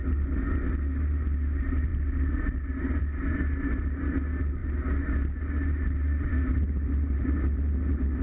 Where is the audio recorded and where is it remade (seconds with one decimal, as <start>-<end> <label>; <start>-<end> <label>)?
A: 0.0-8.2 recorded